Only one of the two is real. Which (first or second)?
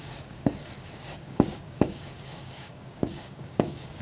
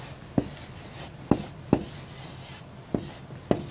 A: second